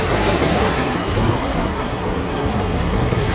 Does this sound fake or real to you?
fake